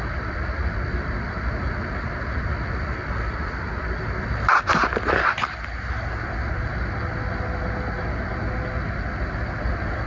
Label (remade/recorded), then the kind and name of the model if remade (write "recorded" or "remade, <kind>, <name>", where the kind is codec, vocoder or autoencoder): recorded